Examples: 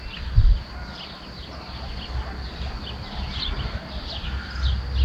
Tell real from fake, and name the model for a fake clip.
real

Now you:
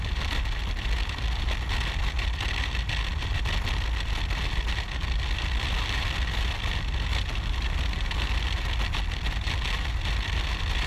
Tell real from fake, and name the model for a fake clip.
real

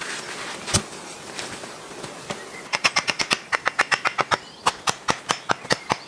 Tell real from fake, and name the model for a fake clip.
real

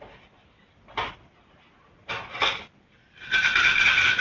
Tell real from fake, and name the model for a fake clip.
real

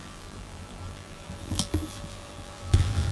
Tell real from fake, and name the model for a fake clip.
fake, vocoder, BigVGAN v2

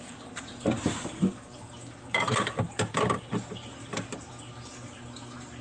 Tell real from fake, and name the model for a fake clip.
fake, vocoder, BigVGAN v2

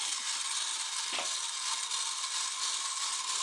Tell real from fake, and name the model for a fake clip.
real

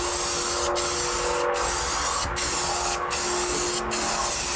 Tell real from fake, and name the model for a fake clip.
real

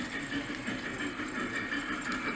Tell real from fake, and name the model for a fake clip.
fake, vocoder, BigVGAN v2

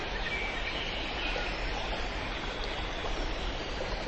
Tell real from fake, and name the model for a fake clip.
real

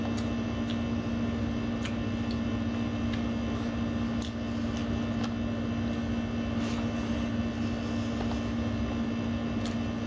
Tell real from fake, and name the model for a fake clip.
real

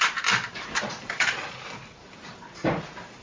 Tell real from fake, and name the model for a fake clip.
fake, vocoder, BigVGAN v2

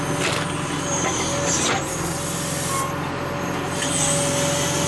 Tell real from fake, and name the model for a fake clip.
real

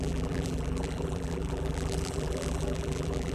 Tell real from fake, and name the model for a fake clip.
fake, vocoder, BigVGAN v2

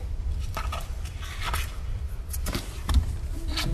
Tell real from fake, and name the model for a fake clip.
fake, vocoder, BigVGAN v2